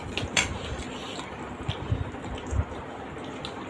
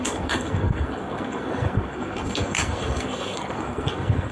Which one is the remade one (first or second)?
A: second